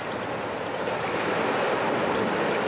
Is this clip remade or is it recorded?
recorded